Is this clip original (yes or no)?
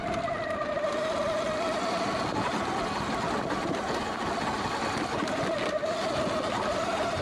yes